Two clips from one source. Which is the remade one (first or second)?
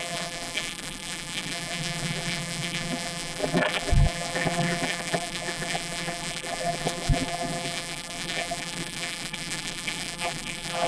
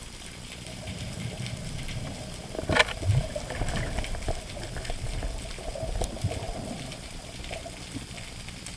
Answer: first